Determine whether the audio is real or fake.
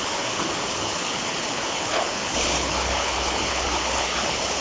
fake